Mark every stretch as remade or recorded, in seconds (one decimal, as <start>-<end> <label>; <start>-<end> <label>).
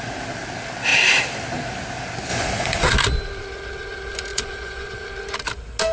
0.0-2.3 recorded; 2.3-2.9 remade; 2.9-4.3 recorded; 4.3-5.0 remade; 5.0-5.9 recorded